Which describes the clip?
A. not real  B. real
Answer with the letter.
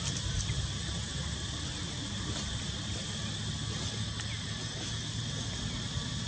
B